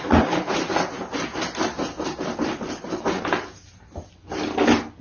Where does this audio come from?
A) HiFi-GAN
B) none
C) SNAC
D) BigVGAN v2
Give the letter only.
B